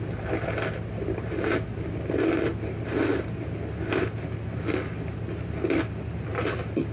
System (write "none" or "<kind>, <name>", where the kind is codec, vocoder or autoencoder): none